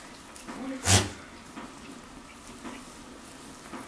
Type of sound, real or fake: real